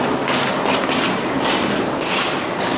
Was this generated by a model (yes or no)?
no